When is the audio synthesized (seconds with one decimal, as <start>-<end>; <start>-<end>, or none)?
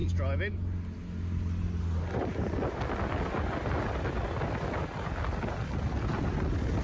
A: none